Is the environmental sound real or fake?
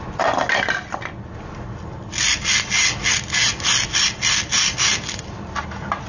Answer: real